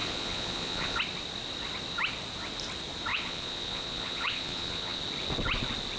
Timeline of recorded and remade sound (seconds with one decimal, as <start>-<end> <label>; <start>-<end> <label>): 0.0-1.0 remade; 1.0-3.1 recorded; 3.1-5.0 remade; 5.0-6.0 recorded